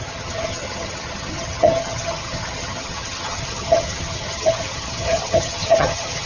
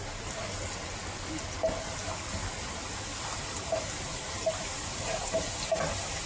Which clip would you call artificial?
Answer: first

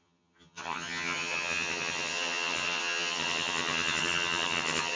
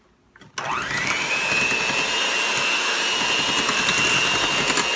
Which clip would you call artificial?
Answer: first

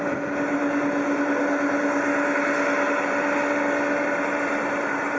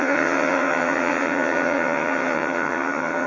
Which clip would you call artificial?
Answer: second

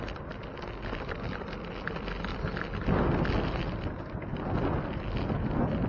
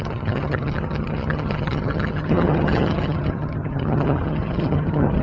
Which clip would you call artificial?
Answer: second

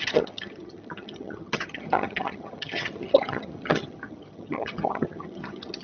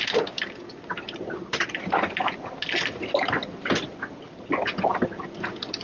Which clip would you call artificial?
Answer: first